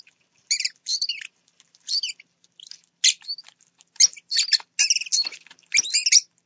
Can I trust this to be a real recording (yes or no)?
yes